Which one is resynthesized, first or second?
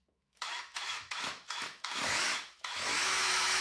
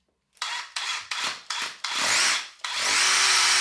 first